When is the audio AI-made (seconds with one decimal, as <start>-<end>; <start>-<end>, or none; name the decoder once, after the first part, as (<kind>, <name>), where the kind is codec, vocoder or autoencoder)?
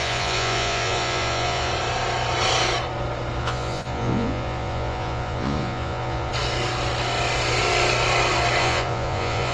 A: 0.0-1.7 (vocoder, Vocos); 3.4-6.3; 8.6-9.5